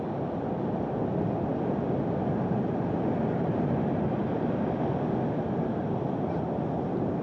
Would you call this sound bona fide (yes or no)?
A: yes